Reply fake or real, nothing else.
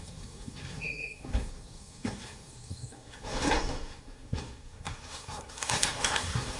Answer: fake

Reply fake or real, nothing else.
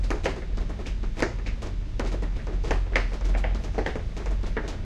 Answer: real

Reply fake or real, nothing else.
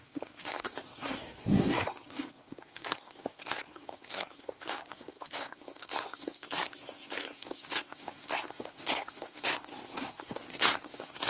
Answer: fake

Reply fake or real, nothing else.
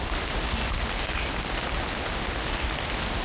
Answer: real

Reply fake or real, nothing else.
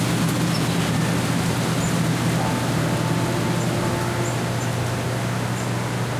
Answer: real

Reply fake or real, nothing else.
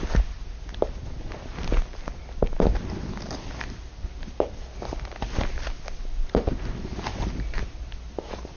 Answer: real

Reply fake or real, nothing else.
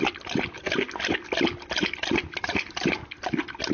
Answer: real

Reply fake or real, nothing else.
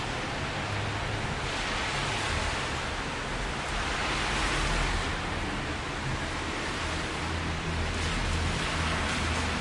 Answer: real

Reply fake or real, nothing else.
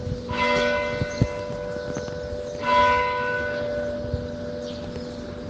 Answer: real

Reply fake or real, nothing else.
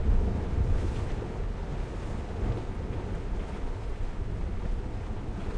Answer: real